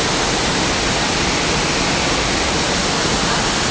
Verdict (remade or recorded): recorded